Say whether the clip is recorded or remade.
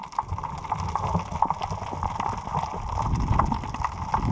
recorded